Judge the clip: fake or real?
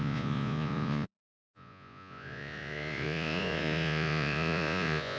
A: fake